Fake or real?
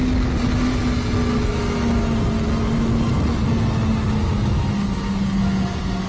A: real